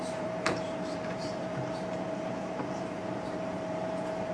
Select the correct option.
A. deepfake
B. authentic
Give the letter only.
A